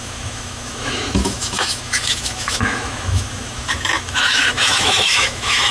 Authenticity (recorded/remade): remade